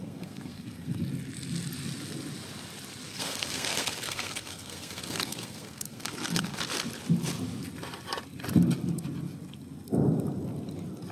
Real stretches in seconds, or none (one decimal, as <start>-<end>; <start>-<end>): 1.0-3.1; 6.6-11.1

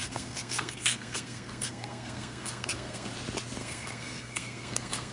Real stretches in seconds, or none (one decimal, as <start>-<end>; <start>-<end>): 3.1-3.6

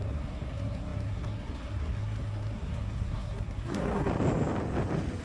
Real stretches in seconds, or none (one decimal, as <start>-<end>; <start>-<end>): 4.1-5.2

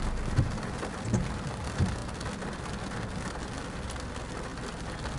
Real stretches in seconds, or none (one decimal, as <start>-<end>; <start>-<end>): 0.0-5.2

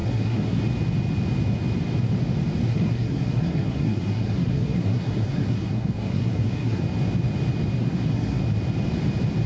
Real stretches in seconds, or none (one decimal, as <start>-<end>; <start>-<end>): 0.6-2.7; 6.8-7.8; 8.4-9.5

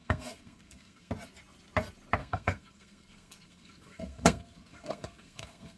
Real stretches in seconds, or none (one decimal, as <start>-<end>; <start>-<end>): 1.1-2.2

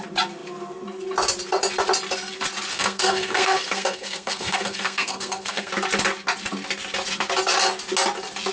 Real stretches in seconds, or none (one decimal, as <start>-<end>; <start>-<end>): 0.0-2.7; 5.7-8.5

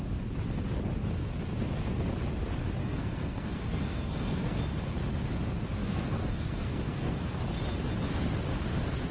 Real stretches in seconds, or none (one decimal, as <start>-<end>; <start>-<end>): 0.0-2.8; 4.6-5.8; 7.2-9.1